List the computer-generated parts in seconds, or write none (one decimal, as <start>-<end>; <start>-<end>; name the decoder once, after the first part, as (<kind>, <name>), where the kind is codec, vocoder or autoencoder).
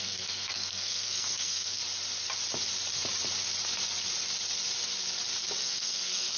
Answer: 0.0-1.8 (codec, SNAC); 5.6-6.4